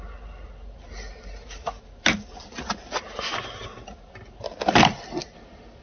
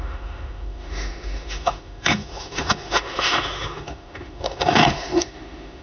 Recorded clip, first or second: first